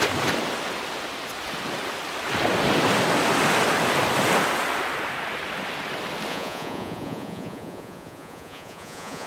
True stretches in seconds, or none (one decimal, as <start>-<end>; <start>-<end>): 0.0-6.3